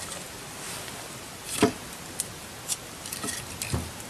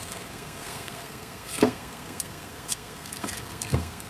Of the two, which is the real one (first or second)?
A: first